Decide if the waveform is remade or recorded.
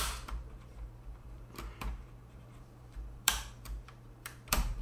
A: remade